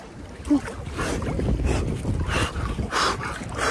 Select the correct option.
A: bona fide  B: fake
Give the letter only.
A